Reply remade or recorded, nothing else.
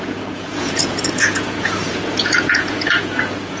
remade